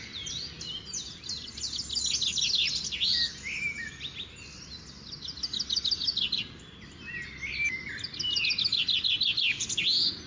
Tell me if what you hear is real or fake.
real